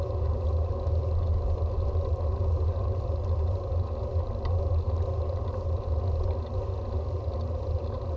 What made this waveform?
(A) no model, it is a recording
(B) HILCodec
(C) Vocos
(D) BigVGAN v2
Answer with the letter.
A